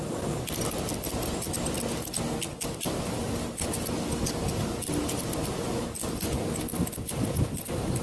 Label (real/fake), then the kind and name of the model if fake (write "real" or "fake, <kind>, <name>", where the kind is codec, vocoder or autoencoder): real